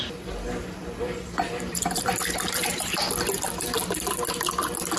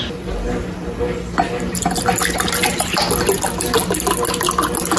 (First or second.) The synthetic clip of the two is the first